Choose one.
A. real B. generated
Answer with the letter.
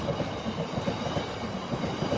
B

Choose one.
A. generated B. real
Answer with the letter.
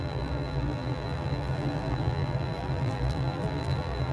A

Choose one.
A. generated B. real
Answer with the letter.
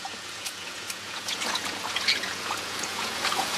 A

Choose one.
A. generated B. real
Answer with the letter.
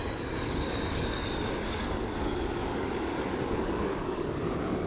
A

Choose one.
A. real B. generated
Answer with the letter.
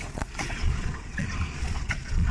B